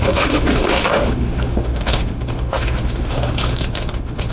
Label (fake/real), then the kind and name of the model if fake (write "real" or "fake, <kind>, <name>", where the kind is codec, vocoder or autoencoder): fake, autoencoder, DAC-VAE